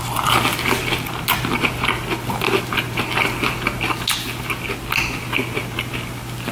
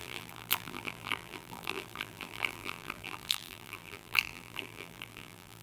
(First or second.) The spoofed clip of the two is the second